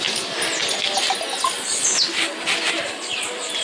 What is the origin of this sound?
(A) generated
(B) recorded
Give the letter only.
B